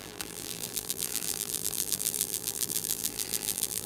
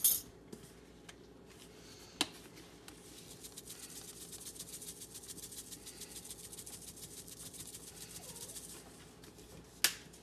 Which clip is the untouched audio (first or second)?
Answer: second